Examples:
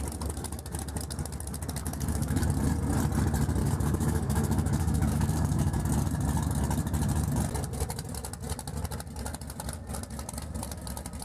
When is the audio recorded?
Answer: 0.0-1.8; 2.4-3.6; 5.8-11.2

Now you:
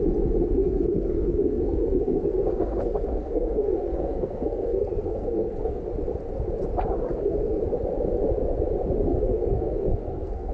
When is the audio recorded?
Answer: 0.0-0.6; 5.8-7.1; 7.6-9.1

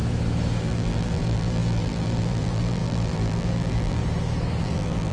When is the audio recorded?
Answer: 0.0-0.6; 4.0-4.6

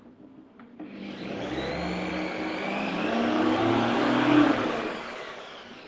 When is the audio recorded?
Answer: 0.0-1.0; 1.7-2.1

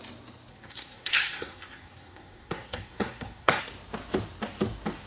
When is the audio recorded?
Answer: 0.0-0.5; 3.6-5.1